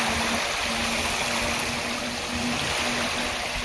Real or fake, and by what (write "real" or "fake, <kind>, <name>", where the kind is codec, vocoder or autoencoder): real